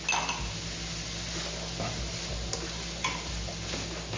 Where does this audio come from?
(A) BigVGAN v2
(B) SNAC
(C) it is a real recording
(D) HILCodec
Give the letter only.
C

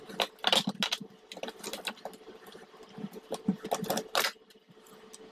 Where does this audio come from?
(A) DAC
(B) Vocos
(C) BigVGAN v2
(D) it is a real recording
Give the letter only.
D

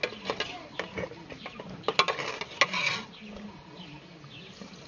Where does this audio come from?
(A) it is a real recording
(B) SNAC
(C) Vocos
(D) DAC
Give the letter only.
A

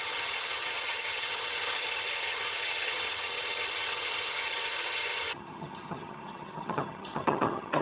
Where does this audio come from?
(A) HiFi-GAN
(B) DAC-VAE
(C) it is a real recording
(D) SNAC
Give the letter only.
A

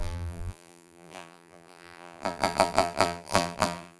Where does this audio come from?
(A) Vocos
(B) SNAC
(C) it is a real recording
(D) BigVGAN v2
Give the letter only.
D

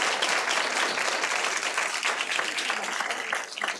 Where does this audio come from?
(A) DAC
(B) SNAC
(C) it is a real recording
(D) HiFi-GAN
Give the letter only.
C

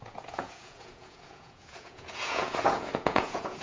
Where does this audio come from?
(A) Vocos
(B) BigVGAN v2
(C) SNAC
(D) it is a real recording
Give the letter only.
A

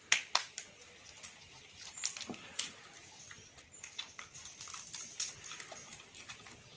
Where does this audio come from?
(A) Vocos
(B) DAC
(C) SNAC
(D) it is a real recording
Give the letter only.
D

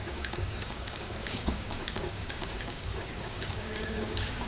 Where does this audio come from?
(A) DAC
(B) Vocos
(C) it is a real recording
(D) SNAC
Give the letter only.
A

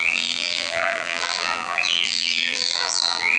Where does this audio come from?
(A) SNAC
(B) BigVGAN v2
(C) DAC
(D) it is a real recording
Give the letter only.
B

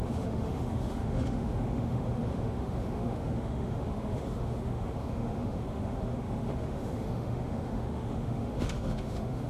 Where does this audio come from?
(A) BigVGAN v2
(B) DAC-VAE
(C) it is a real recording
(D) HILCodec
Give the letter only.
B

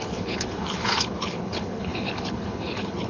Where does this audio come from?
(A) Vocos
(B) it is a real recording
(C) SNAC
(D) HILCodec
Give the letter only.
D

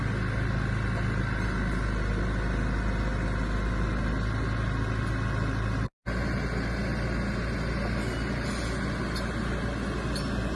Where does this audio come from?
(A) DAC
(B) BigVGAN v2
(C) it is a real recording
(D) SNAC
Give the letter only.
C